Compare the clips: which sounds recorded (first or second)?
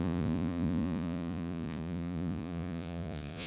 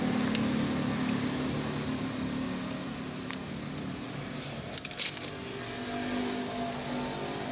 second